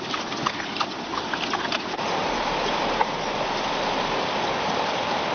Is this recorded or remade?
recorded